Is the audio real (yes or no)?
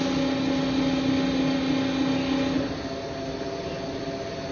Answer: yes